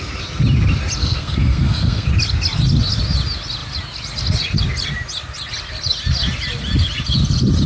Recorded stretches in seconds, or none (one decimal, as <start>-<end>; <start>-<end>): 0.0-1.0; 2.1-7.7